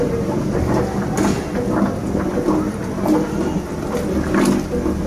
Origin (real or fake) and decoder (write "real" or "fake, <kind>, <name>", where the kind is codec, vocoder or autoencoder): real